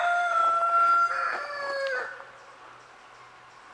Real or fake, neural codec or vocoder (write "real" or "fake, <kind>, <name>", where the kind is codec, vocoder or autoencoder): real